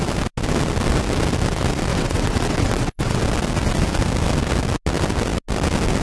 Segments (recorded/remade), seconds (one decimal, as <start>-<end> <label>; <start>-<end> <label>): 0.0-1.9 recorded; 1.9-3.2 remade; 3.2-6.0 recorded